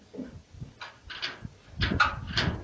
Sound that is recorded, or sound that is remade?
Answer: recorded